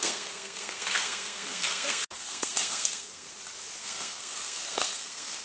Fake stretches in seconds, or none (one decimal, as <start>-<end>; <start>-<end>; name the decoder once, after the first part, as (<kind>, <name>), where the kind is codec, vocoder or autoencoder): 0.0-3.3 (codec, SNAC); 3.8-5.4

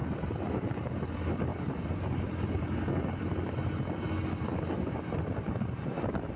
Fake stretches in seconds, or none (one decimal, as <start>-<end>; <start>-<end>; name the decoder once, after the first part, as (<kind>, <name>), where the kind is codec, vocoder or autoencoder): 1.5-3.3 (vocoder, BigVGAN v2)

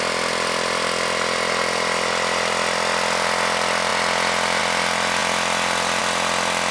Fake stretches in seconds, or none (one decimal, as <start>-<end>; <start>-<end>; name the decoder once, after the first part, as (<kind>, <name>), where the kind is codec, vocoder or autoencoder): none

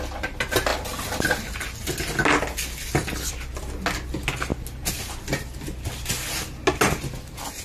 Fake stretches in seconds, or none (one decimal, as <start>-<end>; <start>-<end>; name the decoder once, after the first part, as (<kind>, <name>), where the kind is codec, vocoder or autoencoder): none

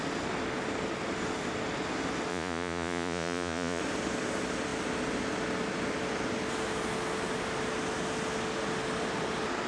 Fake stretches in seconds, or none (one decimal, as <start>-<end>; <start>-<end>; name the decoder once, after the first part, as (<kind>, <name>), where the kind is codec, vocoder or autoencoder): 2.3-3.8 (vocoder, Vocos)

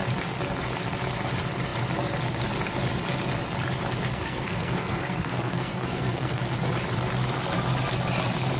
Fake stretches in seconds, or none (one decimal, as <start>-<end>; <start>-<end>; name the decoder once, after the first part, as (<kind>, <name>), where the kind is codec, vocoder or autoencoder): 4.1-6.4 (codec, SNAC)

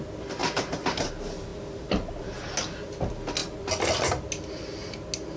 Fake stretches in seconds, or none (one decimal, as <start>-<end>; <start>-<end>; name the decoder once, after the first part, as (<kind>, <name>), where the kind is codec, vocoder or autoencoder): 0.4-1.1 (vocoder, BigVGAN v2)

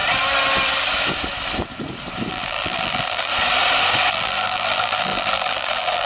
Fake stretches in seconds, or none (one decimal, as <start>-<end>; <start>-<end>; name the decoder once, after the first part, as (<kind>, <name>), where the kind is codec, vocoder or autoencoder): 2.3-3.3 (vocoder, BigVGAN v2); 4.1-6.1